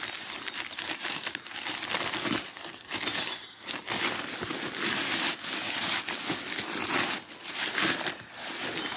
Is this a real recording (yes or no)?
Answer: yes